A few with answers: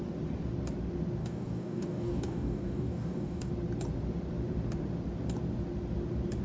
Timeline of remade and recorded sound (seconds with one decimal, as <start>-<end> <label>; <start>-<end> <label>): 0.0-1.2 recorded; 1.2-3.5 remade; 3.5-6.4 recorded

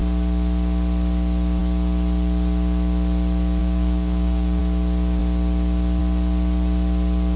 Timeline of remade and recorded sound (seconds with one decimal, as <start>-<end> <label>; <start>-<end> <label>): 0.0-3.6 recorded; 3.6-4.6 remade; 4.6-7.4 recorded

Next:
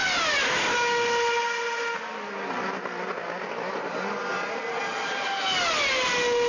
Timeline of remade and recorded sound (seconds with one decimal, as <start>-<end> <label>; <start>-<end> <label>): 0.0-6.5 recorded

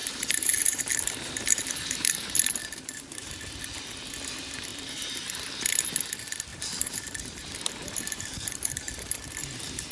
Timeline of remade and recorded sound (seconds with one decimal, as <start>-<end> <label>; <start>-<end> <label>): 0.0-2.2 remade; 2.2-2.6 recorded; 2.6-3.8 remade; 3.8-4.7 recorded; 4.7-5.4 remade; 5.4-6.5 recorded; 6.5-9.1 remade; 9.1-9.9 recorded

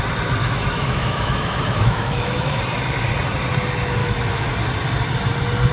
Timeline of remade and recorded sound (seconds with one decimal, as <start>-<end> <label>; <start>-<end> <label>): 0.0-0.4 recorded; 0.4-2.6 remade; 2.6-4.0 recorded; 4.0-4.5 remade; 4.5-5.7 recorded

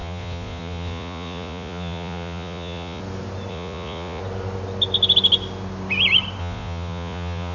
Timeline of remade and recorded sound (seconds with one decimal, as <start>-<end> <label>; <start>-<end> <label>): 0.0-3.0 remade; 3.0-3.5 recorded; 3.5-4.2 remade; 4.2-6.4 recorded; 6.4-7.5 remade

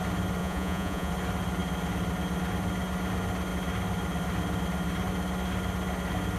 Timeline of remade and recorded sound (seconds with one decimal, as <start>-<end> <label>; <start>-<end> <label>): 0.0-0.4 recorded; 0.4-1.1 remade; 1.1-6.4 recorded